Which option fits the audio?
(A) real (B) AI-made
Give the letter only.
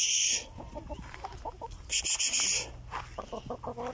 A